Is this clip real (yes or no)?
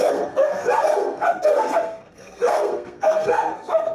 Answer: no